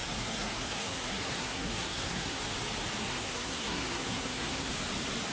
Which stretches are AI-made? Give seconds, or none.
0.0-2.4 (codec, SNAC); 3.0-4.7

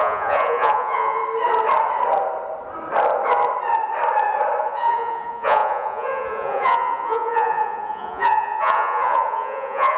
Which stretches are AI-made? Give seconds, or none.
0.0-1.2 (vocoder, Vocos); 4.6-10.0

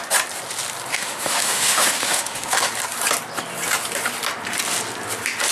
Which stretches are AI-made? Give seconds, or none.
0.9-2.7 (autoencoder, DAC-VAE)

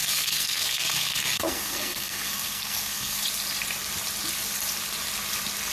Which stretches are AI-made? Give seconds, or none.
0.0-3.2 (codec, SNAC)